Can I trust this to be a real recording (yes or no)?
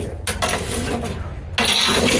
yes